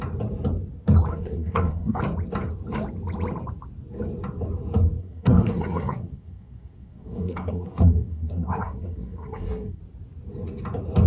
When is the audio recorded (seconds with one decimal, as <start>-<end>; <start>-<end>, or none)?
0.0-1.1; 2.0-5.0; 9.8-11.1

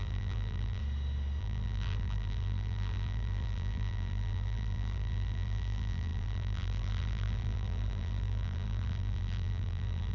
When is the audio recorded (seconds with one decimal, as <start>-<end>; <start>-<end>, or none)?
0.8-1.4

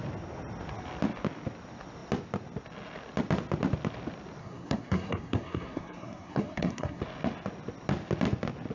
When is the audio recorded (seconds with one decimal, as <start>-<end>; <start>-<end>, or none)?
0.0-4.4; 7.0-8.7